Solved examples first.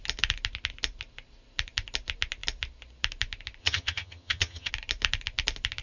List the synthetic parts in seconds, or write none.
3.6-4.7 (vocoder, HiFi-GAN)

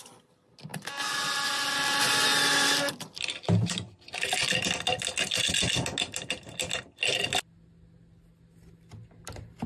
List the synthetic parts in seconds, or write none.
none

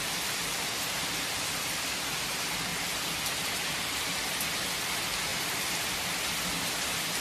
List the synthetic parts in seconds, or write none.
5.3-6.2 (vocoder, BigVGAN v2)

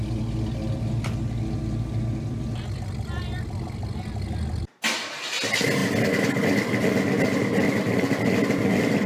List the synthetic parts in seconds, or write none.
none

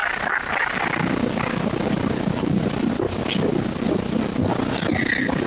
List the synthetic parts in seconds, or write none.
none

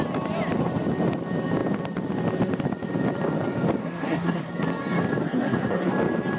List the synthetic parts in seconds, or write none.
3.8-4.5 (codec, SNAC); 5.2-5.9

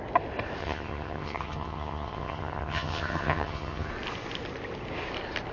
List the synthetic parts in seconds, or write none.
0.6-3.9 (vocoder, HiFi-GAN)